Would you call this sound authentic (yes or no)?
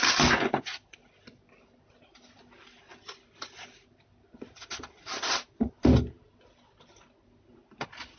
yes